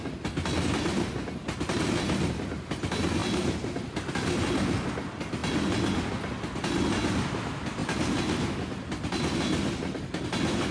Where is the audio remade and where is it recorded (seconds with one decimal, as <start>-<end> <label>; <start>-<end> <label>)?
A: 0.0-10.7 recorded

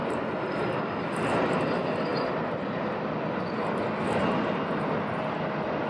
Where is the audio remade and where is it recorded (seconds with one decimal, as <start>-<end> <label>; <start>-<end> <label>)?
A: 0.0-1.5 remade; 1.5-5.9 recorded